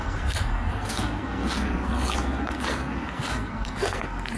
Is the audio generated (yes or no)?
yes